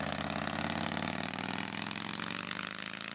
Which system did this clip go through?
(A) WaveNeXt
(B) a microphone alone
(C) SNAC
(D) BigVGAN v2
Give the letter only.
B